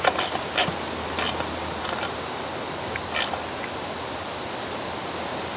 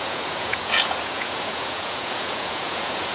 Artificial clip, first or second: second